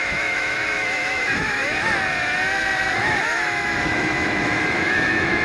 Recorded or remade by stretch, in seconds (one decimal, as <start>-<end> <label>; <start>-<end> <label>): 0.0-1.9 remade; 1.9-3.0 recorded; 3.0-5.4 remade